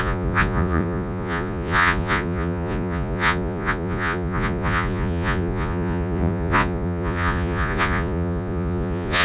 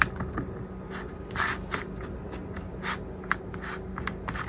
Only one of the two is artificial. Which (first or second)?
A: first